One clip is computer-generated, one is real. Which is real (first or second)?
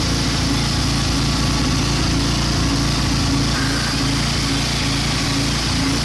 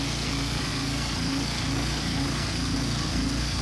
first